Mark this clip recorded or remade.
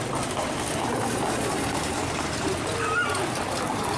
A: remade